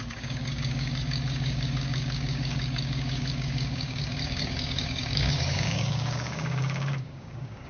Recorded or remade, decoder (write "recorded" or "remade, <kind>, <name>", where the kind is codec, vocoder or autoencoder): remade, codec, DAC